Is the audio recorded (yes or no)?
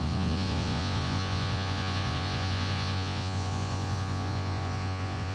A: no